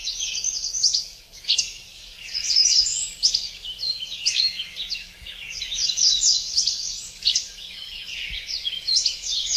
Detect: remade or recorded remade